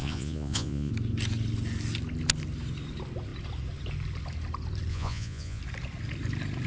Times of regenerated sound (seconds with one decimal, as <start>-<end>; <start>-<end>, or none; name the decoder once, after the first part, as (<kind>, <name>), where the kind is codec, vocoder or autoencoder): 0.0-0.9 (vocoder, Vocos); 4.9-5.6